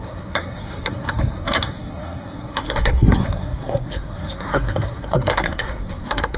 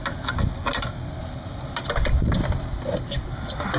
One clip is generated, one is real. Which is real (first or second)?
second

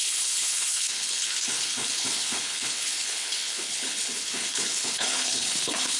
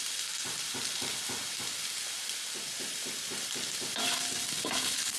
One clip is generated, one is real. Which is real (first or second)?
second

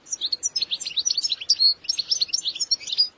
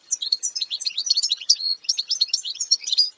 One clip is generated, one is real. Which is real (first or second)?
first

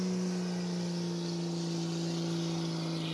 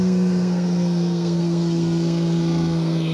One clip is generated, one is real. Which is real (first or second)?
first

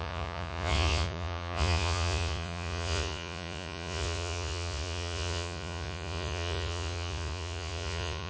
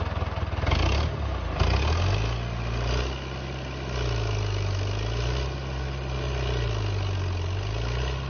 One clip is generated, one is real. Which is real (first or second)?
second